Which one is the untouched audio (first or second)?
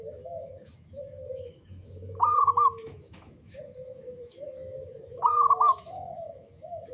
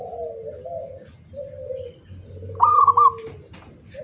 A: second